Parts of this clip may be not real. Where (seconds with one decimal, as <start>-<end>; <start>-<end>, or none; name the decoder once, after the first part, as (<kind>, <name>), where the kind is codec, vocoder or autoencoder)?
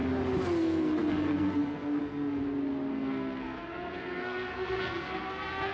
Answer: 0.6-2.4 (codec, SNAC); 2.9-5.7